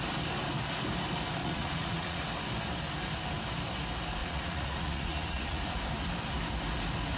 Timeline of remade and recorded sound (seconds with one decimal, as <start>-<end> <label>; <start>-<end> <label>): 0.0-1.4 recorded; 1.4-2.2 remade; 2.2-4.2 recorded; 4.2-5.6 remade; 5.6-7.2 recorded

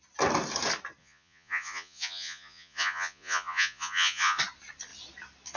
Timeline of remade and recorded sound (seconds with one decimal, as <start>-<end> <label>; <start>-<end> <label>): 0.0-1.0 recorded; 1.0-4.4 remade; 4.4-5.6 recorded